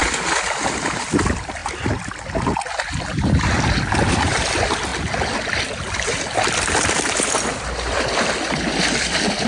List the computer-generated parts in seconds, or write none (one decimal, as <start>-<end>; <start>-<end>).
0.7-4.9; 6.5-9.5